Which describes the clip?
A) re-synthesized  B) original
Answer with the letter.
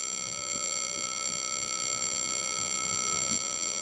A